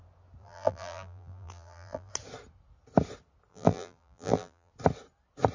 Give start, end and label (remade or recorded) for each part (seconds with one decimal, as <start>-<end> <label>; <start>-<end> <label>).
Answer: 0.0-0.4 recorded; 0.4-2.1 remade; 2.1-3.5 recorded; 3.5-4.7 remade; 4.7-5.5 recorded